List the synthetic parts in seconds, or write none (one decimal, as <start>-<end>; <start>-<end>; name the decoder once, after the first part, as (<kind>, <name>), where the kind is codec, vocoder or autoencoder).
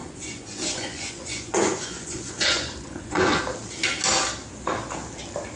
0.0-3.4 (vocoder, Vocos)